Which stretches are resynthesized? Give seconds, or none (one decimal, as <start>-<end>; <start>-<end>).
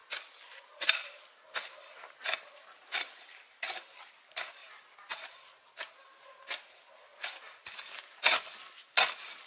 0.0-2.5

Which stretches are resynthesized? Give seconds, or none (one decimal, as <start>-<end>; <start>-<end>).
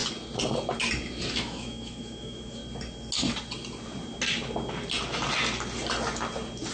1.3-2.6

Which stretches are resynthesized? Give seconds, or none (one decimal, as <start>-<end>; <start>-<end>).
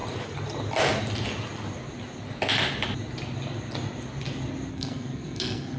4.7-5.8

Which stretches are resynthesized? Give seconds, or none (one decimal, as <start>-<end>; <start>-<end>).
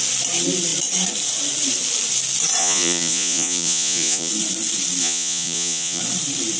2.6-4.3; 5.0-6.0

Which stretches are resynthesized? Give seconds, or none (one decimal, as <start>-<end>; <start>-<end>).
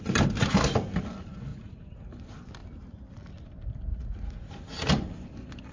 1.5-2.0; 3.9-4.5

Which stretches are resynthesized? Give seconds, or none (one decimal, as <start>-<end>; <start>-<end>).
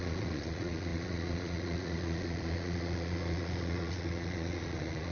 0.0-5.1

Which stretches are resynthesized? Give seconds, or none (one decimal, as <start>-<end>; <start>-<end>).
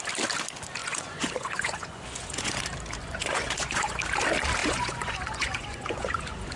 0.8-2.6; 3.0-4.0; 4.6-6.6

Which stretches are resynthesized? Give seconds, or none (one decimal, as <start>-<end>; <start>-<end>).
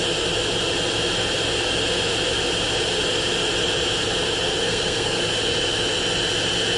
4.6-5.2